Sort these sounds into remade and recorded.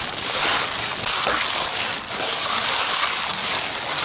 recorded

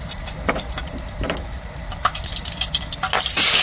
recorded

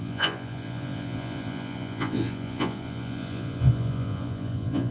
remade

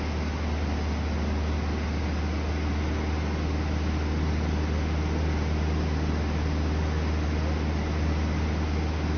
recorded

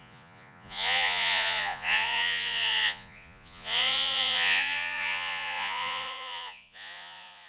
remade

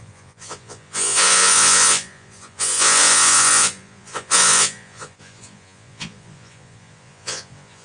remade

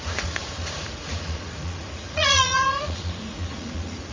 remade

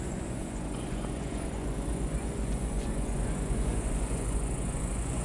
remade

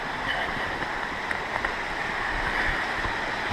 recorded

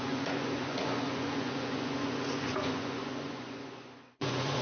remade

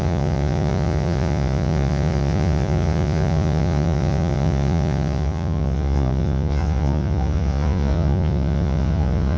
remade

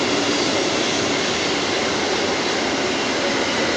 recorded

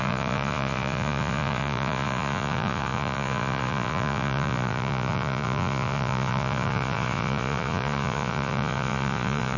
remade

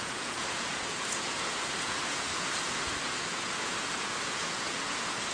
remade